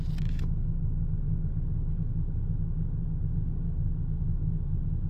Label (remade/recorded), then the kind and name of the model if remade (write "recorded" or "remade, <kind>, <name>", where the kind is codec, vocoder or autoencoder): recorded